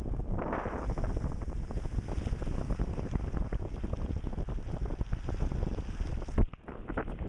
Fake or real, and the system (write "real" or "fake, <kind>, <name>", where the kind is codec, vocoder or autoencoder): real